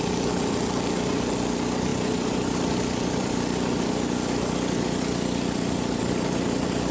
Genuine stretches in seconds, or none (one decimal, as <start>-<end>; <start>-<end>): 0.0-1.9; 6.0-6.9

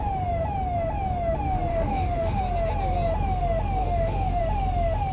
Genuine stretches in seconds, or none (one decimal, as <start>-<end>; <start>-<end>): 0.0-1.7; 2.4-3.8; 4.4-5.1